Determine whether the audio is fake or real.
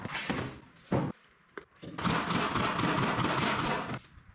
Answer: real